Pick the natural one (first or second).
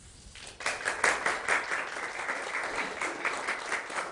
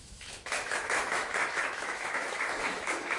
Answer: first